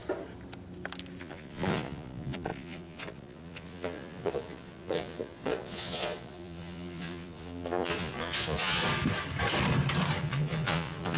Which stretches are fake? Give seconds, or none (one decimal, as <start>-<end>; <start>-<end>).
1.2-8.8; 10.2-11.2